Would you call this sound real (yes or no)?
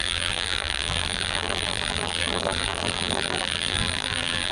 no